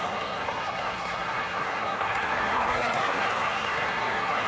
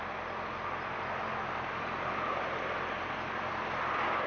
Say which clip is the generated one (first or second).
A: first